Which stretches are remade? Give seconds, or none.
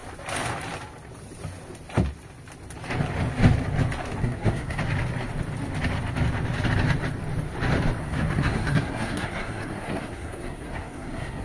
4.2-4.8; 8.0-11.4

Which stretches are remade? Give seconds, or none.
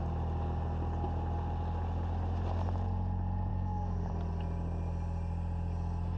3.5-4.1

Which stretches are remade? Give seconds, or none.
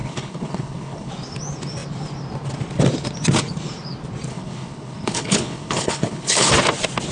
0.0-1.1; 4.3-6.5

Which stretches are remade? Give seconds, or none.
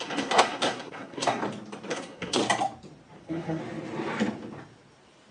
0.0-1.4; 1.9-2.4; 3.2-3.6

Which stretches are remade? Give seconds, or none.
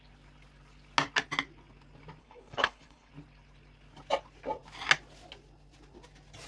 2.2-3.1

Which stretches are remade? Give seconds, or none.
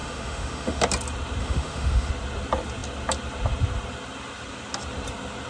0.0-0.8; 1.4-2.1